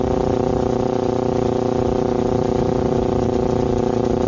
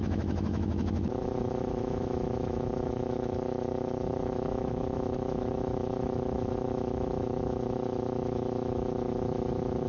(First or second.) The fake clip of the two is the second